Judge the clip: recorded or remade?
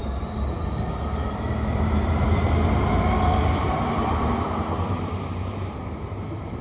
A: remade